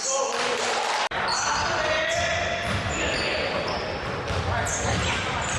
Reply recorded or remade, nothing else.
recorded